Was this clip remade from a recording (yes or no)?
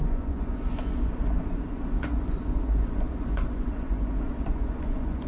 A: yes